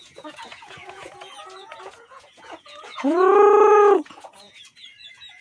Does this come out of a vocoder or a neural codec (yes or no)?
yes